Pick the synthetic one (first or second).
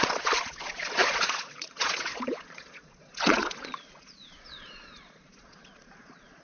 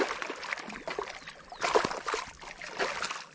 first